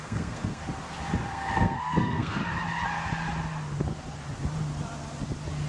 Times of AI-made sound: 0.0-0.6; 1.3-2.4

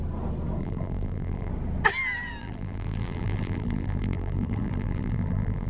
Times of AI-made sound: 0.6-1.5; 2.4-5.7

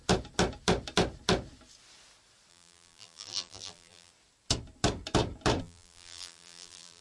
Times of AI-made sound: 2.5-4.1; 5.6-7.0

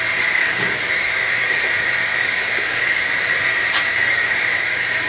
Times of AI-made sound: 0.4-1.6; 2.1-3.0; 4.2-5.1

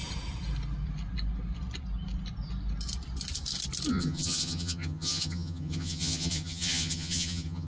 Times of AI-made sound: 3.9-7.7

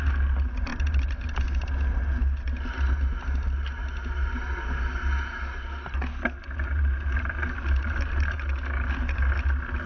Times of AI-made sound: 0.7-1.4; 6.4-8.6

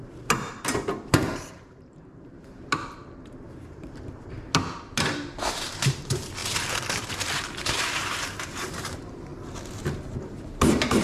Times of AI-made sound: 0.0-6.4; 7.6-9.3; 10.2-11.0

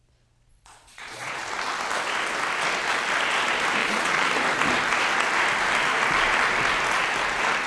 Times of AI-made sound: 0.5-1.4; 3.8-4.3